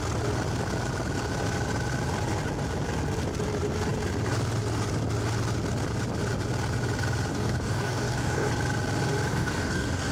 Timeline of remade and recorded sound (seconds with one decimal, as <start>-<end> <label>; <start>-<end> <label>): 0.0-7.3 recorded; 7.3-8.5 remade; 8.5-9.3 recorded; 9.3-10.1 remade